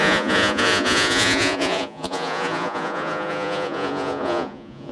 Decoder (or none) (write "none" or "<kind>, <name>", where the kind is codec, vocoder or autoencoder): vocoder, Vocos